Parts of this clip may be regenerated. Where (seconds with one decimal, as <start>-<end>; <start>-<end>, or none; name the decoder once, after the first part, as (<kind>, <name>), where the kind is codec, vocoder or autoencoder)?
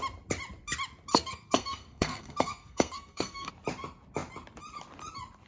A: 1.1-3.5 (codec, SNAC)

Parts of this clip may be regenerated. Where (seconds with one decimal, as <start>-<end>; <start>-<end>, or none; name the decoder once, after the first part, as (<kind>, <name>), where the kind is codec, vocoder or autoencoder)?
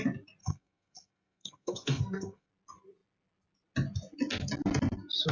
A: 0.4-2.5 (codec, SNAC)